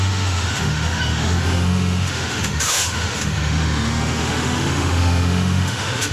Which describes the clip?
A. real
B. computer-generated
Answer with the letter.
B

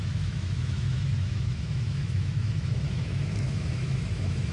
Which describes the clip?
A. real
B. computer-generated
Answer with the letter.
B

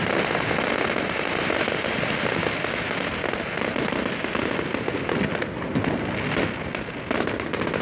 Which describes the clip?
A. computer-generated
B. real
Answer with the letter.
B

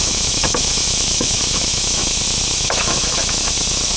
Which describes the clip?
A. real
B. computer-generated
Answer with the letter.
B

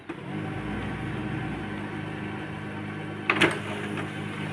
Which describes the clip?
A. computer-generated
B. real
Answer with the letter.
B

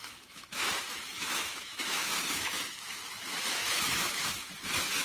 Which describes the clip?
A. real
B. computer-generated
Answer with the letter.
B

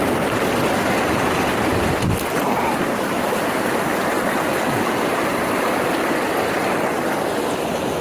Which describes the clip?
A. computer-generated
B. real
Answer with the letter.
B